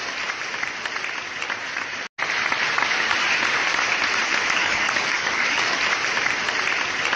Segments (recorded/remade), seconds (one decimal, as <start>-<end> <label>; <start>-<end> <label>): 0.0-4.6 recorded; 4.6-5.8 remade; 5.8-7.2 recorded